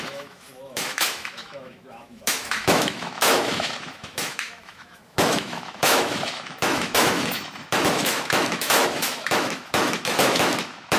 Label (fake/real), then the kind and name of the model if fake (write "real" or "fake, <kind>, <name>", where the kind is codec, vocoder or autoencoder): fake, autoencoder, DAC-VAE